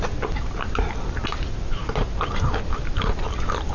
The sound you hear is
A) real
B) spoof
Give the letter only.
A